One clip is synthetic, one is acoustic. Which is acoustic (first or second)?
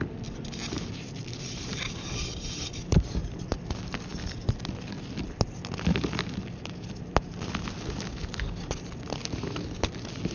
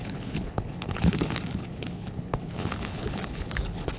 first